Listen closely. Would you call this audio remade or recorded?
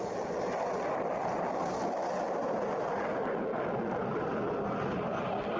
recorded